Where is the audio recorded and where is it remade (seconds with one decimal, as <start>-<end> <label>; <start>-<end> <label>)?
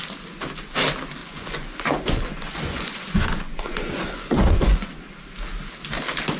0.0-1.2 recorded; 1.2-5.0 remade; 5.0-6.4 recorded